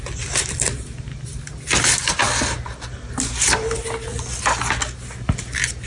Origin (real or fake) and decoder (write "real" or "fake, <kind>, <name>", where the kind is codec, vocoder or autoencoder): real